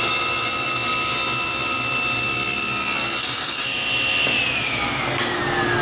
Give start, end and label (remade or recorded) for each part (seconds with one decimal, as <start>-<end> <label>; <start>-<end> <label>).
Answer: 0.0-5.8 recorded